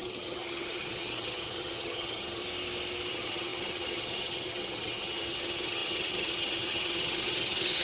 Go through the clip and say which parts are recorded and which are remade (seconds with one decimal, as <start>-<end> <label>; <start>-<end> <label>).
0.0-2.4 remade; 2.4-3.1 recorded; 3.1-7.8 remade